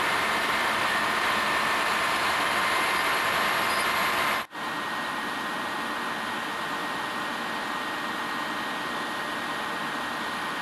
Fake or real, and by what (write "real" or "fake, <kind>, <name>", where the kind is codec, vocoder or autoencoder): real